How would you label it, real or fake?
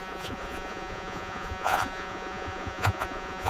fake